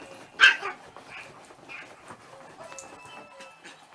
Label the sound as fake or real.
real